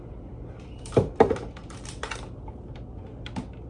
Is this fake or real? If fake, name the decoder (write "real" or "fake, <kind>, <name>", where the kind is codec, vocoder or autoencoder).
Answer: real